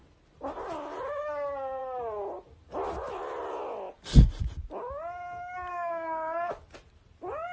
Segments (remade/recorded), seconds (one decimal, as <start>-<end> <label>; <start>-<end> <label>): 0.0-5.7 recorded; 5.7-6.5 remade; 6.5-7.5 recorded